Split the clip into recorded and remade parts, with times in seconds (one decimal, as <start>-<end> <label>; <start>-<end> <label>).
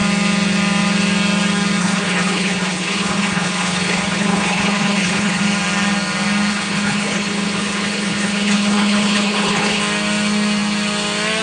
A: 0.0-1.8 recorded; 1.8-5.4 remade; 5.4-6.5 recorded; 6.5-9.8 remade; 9.8-11.4 recorded